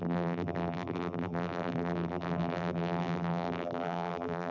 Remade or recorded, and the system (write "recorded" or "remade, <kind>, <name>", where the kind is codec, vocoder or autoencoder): remade, vocoder, BigVGAN v2